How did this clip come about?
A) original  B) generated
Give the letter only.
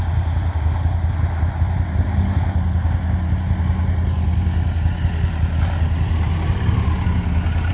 A